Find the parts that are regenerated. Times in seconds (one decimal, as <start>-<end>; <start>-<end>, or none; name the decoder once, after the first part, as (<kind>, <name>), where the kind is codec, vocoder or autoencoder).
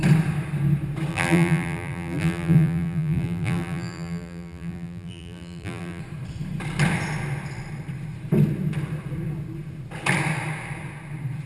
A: 1.1-6.0 (vocoder, BigVGAN v2)